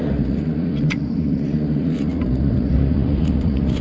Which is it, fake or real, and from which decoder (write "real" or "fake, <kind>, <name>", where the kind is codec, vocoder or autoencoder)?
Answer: fake, vocoder, Vocos